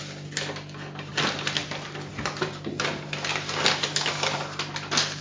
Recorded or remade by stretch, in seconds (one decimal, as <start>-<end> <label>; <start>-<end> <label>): 0.0-5.2 recorded